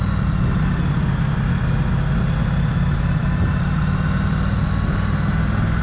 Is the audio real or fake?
real